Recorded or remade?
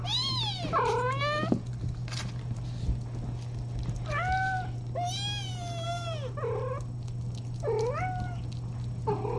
recorded